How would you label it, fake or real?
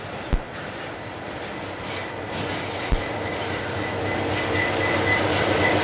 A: real